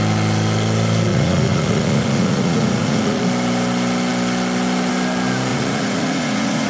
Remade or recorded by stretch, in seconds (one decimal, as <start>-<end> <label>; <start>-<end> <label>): 0.0-1.1 recorded; 1.1-3.2 remade; 3.2-5.5 recorded; 5.5-6.7 remade